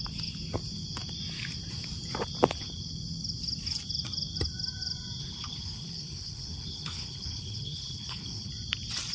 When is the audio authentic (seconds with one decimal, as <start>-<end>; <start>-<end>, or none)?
0.0-5.2; 8.5-9.1